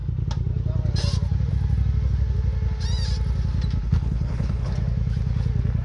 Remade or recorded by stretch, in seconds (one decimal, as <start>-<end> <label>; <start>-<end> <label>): 0.0-3.8 recorded; 3.8-4.7 remade; 4.7-5.8 recorded